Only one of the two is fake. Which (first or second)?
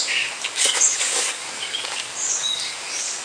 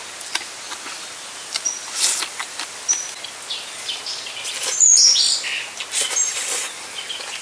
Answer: first